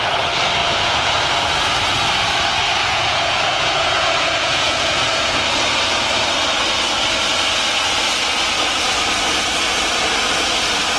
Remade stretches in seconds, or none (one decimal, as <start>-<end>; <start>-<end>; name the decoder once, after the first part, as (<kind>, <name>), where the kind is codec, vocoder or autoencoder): 0.6-1.1 (vocoder, Vocos); 2.8-5.4